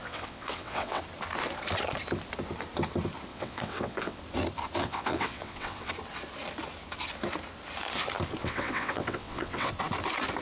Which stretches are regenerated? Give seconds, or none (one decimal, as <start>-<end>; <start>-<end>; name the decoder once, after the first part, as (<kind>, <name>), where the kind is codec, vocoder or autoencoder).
0.0-1.0 (vocoder, WaveNeXt); 3.3-4.2; 4.8-5.9; 8.4-9.7